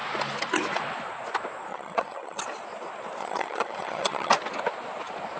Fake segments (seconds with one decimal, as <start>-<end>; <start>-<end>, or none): 1.7-2.4; 3.2-4.3